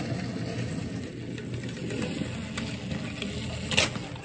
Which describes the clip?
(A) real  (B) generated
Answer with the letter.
A